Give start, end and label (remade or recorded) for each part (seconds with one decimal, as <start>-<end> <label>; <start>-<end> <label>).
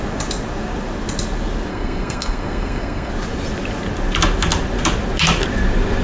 0.0-1.7 recorded; 1.7-3.1 remade; 3.1-6.0 recorded